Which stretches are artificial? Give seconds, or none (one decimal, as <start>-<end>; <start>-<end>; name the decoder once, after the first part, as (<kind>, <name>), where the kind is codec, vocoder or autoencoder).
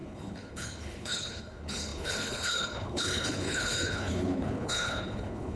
0.0-5.6 (codec, HILCodec)